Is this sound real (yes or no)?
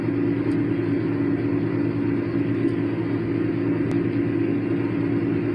yes